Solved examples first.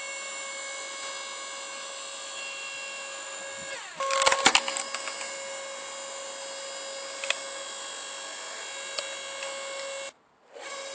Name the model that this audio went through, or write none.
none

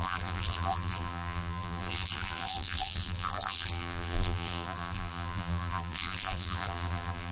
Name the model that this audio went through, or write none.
vocoder, BigVGAN v2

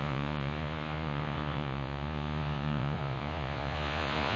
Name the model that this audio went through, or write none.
vocoder, Vocos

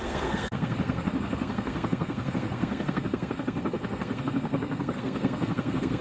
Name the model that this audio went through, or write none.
codec, SNAC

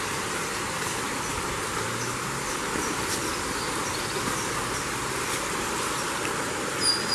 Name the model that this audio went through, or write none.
none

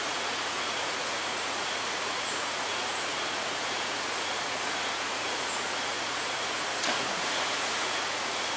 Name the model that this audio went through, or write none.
vocoder, Vocos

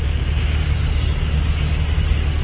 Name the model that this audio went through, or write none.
none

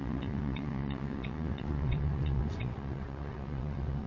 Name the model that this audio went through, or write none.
vocoder, WaveNeXt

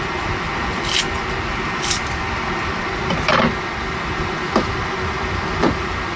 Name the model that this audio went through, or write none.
vocoder, BigVGAN v2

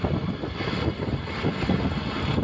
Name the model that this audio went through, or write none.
none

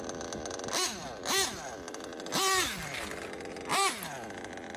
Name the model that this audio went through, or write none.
none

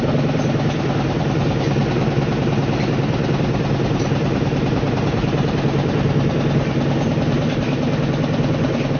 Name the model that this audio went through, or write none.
none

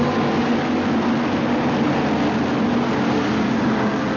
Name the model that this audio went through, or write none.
none